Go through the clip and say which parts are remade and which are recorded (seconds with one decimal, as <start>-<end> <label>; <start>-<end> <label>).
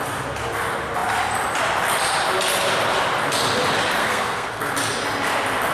0.0-4.0 recorded; 4.0-4.7 remade; 4.7-5.7 recorded